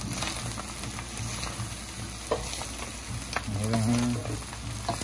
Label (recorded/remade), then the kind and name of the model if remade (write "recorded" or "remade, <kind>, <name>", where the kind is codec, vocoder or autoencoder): recorded